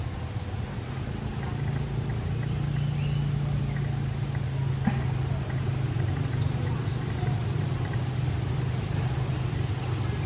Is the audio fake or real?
real